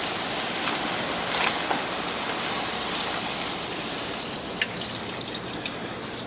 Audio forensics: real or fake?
real